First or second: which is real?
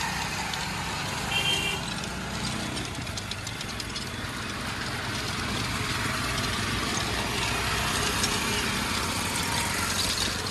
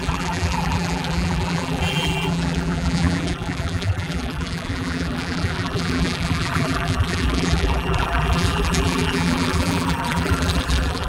first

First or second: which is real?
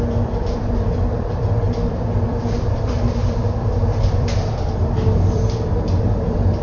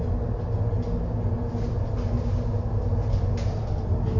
second